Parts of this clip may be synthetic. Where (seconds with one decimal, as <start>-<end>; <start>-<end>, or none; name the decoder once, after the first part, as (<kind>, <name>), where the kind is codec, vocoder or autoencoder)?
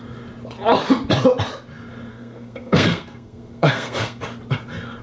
2.1-4.2 (codec, SNAC)